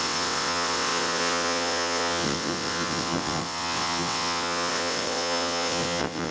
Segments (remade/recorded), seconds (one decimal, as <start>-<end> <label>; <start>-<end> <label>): 0.0-6.3 remade